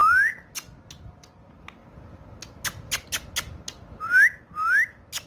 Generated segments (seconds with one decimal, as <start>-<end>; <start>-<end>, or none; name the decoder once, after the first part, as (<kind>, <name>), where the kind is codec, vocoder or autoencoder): none